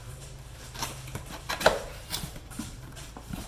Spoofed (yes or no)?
yes